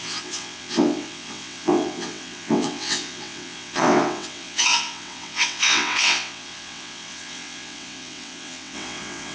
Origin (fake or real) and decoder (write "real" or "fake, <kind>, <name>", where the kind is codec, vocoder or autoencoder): fake, vocoder, WaveNeXt